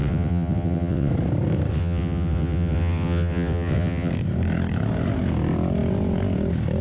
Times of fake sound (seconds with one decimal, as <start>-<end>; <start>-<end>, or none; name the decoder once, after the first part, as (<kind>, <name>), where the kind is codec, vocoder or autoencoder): 0.0-1.1 (vocoder, WaveNeXt); 1.7-4.1